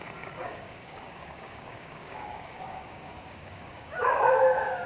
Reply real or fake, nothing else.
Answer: fake